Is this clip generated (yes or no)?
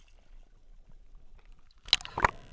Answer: no